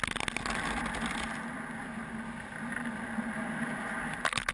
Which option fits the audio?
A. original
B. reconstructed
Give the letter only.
A